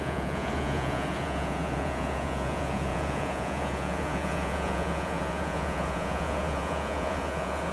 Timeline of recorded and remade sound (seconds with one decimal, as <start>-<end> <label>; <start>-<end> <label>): 0.0-7.7 remade